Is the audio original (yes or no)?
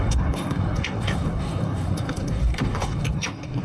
no